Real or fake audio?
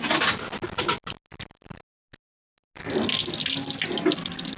real